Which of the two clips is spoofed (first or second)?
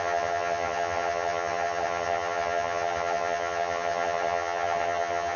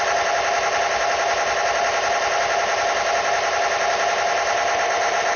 first